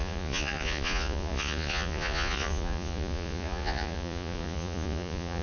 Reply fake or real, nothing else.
fake